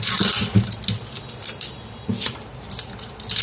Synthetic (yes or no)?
no